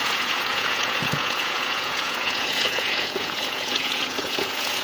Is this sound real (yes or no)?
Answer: no